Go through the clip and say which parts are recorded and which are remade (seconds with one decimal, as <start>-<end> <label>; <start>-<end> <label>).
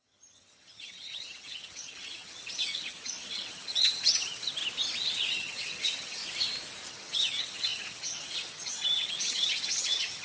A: 0.0-4.6 remade; 4.6-5.3 recorded; 5.3-6.2 remade; 6.2-6.9 recorded; 6.9-10.2 remade